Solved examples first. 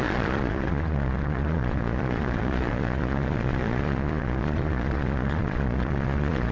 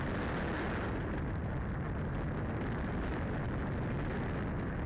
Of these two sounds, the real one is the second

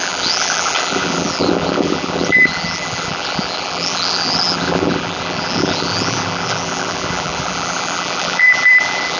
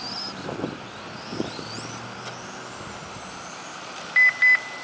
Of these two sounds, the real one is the second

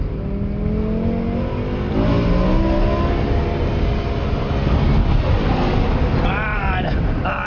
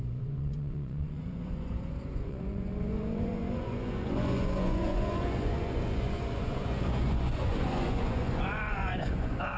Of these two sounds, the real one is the first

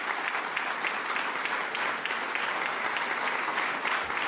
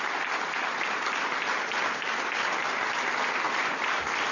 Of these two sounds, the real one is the first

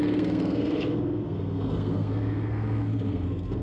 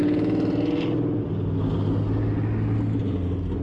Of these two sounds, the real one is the second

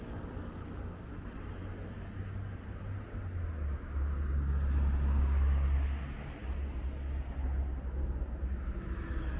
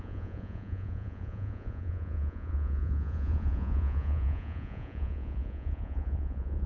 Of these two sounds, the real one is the first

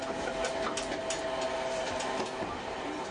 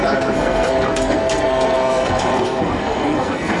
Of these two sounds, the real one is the first